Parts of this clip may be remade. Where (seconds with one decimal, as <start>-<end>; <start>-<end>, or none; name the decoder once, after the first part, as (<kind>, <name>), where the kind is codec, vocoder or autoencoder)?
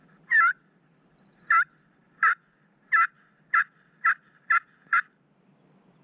none